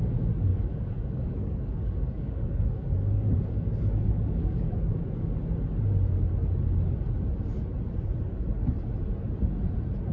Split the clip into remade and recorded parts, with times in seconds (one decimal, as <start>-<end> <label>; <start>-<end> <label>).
0.0-0.5 recorded; 0.5-5.3 remade; 5.3-10.1 recorded

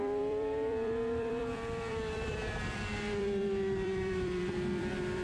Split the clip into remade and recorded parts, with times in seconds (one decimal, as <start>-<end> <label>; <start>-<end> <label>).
0.0-5.2 remade

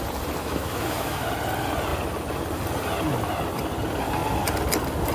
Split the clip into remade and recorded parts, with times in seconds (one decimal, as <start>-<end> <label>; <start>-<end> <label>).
0.0-0.4 recorded; 0.4-1.3 remade; 1.3-5.1 recorded